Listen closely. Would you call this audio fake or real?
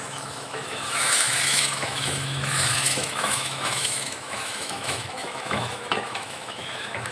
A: fake